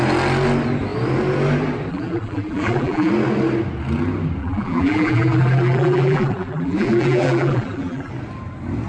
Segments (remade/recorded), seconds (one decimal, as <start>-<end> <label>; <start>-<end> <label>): 0.0-1.9 recorded; 1.9-3.1 remade; 3.1-4.4 recorded; 4.4-8.1 remade; 8.1-8.9 recorded